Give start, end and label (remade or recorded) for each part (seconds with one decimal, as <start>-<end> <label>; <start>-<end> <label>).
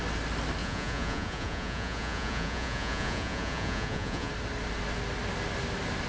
0.0-0.6 recorded; 0.6-4.3 remade; 4.3-6.1 recorded